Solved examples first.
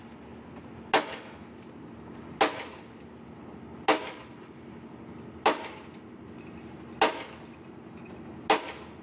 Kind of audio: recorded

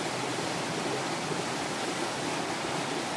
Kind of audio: recorded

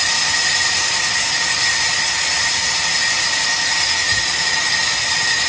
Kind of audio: recorded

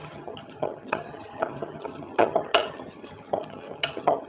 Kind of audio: remade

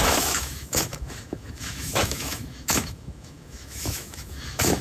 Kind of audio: remade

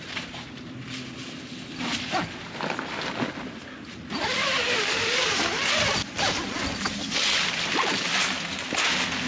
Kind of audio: recorded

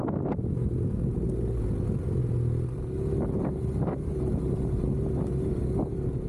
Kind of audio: recorded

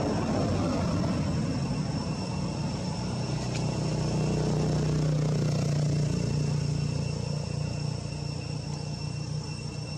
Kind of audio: recorded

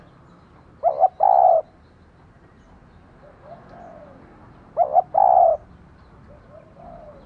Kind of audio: recorded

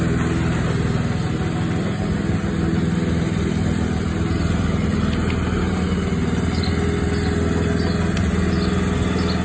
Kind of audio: recorded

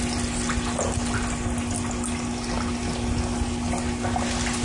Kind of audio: recorded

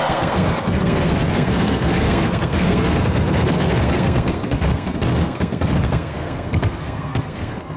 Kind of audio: remade